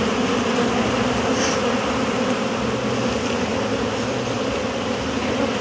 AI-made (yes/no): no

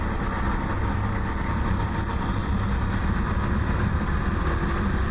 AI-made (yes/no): no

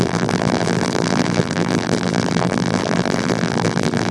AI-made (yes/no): yes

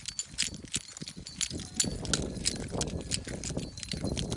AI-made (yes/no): no